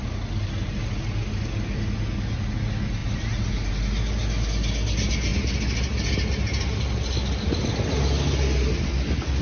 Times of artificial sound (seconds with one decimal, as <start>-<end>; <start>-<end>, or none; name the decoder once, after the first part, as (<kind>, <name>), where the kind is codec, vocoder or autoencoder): none